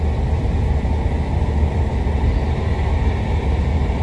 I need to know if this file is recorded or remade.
recorded